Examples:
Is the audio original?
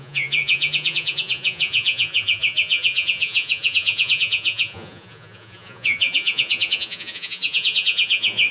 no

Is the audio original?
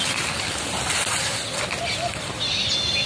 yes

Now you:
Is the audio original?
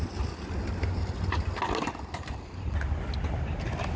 yes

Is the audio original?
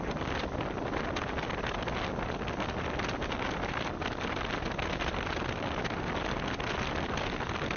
yes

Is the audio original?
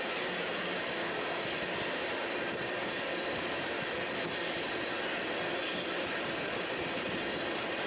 yes